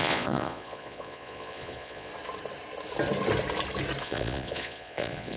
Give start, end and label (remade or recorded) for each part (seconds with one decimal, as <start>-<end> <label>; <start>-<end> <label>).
0.0-2.1 remade; 2.1-4.0 recorded; 4.0-5.4 remade